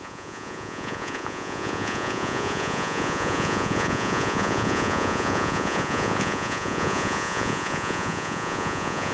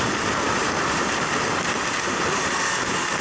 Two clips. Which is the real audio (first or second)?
second